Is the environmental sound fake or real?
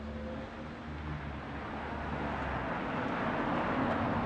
real